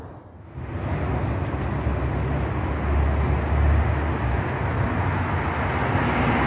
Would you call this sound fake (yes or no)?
no